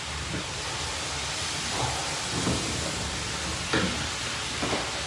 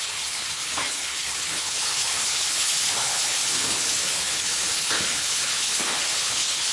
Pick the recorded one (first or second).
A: first